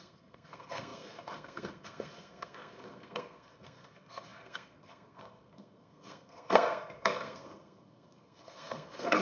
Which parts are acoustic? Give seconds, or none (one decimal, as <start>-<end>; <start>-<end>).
none